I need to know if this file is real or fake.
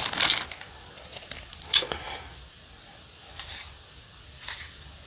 real